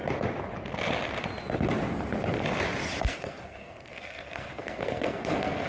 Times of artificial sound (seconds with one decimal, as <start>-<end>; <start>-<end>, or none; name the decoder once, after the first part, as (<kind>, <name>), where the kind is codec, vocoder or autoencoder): 3.0-5.7 (codec, SNAC)